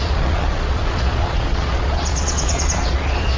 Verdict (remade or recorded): remade